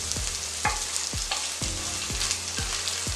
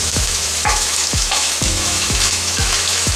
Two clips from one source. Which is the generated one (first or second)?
second